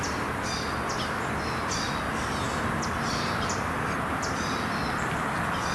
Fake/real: real